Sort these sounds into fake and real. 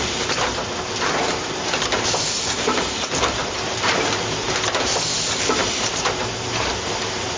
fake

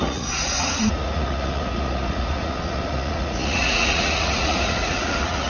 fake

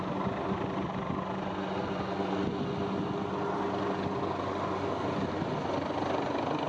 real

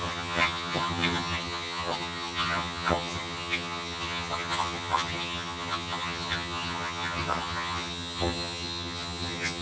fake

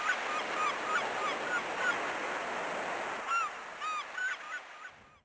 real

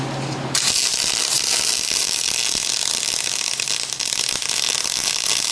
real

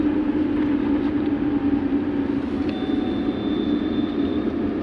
real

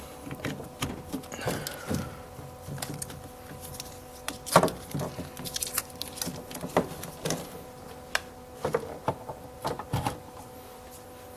real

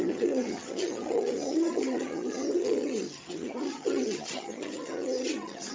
fake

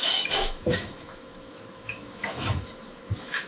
fake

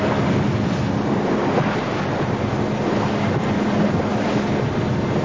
real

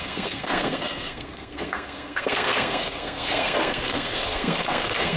fake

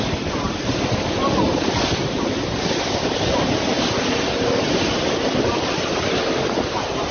real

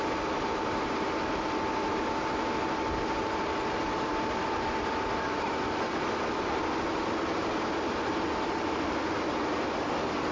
real